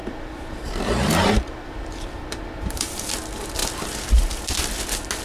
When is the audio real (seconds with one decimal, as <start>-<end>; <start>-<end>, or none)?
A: 3.1-5.2